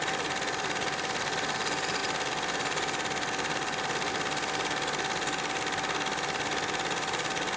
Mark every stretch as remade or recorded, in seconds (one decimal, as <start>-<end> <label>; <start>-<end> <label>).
0.0-7.6 recorded